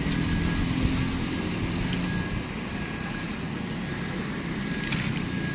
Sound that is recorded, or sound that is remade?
recorded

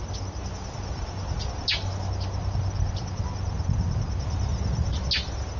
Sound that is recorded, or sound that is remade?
recorded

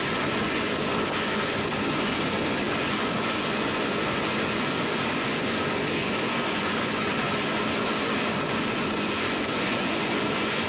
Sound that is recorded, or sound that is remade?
remade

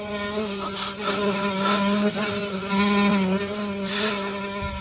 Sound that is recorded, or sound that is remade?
recorded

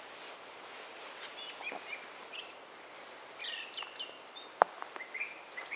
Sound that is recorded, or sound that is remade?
recorded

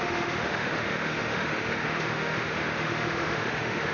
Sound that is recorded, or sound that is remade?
remade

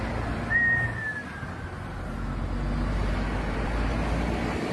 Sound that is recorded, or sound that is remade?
recorded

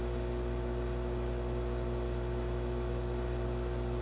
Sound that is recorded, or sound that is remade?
recorded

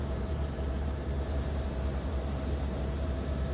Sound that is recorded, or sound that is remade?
remade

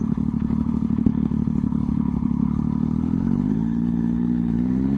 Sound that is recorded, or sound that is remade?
remade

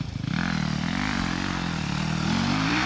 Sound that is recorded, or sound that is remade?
remade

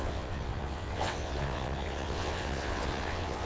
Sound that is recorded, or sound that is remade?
remade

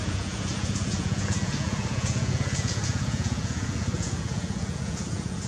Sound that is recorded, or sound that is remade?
remade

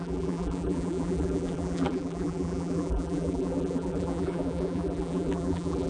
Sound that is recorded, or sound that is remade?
remade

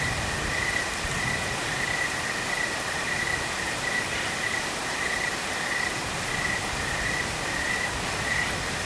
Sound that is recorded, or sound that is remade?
recorded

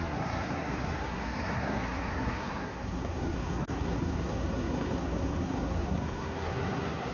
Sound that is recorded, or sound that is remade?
remade